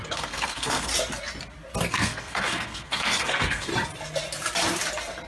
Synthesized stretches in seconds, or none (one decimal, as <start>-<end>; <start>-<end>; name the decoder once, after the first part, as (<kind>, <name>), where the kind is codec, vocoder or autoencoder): 0.0-0.9 (codec, SNAC); 1.9-3.7

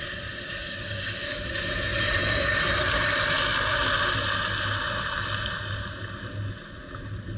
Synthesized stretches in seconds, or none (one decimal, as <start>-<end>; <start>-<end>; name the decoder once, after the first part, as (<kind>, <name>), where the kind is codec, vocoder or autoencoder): 0.6-1.5 (codec, DAC)